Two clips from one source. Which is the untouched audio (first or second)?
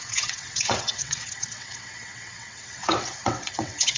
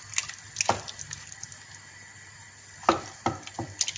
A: second